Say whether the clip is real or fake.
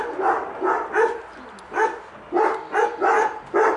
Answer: real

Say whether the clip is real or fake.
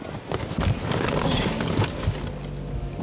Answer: real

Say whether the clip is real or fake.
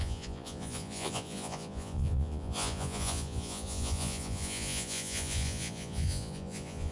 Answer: fake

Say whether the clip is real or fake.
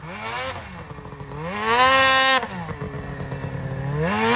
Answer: real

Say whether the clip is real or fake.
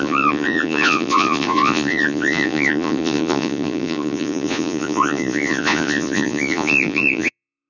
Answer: fake